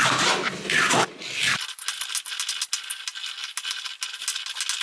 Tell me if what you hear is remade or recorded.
recorded